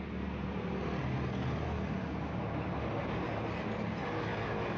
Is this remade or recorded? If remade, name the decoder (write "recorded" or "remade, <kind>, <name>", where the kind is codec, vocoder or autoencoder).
recorded